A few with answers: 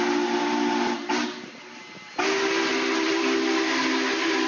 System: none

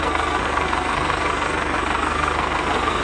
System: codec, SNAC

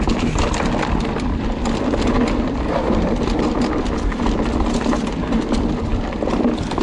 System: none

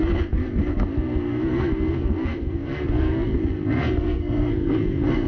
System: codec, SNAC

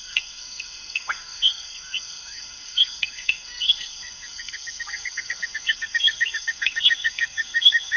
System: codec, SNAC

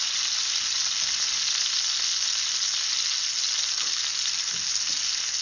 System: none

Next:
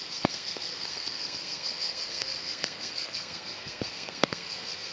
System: codec, SNAC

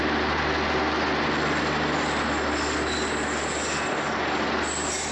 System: none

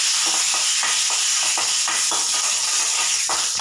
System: none